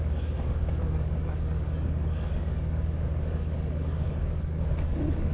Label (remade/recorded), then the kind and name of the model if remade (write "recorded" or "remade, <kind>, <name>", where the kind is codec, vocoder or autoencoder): remade, codec, DAC